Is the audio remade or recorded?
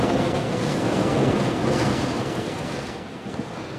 remade